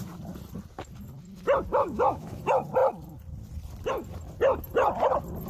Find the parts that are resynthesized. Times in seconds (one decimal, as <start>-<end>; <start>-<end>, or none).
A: 1.7-2.4